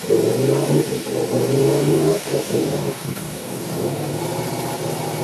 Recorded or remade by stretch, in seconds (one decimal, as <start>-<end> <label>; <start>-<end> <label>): 0.0-1.6 recorded; 1.6-4.2 remade; 4.2-5.2 recorded